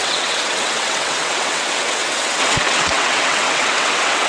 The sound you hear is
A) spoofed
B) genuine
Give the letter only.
A